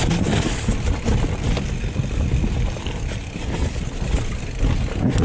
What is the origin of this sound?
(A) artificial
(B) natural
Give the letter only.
B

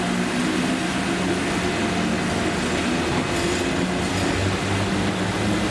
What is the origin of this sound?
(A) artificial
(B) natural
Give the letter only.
B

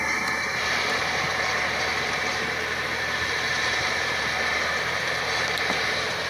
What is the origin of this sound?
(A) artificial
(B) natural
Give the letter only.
A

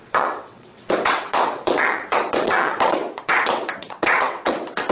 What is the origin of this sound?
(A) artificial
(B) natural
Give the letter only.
A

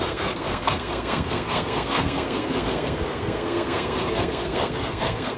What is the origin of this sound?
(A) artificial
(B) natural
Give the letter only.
A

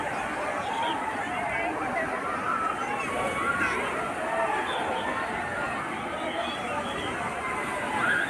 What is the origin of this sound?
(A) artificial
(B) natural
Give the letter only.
B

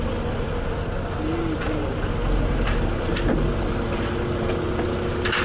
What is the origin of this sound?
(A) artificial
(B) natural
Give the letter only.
B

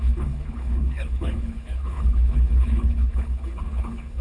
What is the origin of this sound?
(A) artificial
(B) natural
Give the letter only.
A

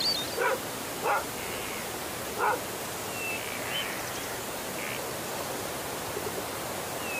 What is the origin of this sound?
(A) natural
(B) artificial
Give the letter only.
A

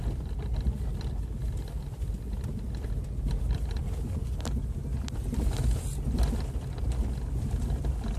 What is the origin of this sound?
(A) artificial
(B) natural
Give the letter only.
B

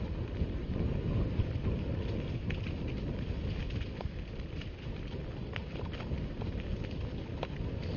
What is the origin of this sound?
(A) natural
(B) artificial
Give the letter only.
A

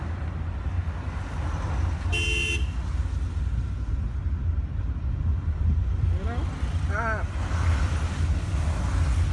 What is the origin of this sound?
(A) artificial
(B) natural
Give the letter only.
B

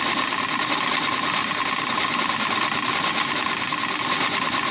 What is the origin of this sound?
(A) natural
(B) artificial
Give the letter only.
A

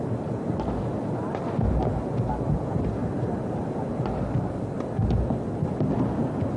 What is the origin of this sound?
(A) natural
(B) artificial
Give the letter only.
A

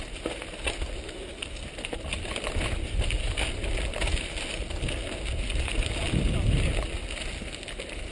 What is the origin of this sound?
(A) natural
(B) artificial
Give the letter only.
A